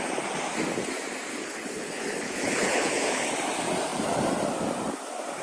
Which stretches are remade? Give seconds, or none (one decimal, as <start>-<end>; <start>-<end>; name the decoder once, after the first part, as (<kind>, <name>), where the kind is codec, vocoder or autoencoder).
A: 1.3-3.3 (codec, HILCodec)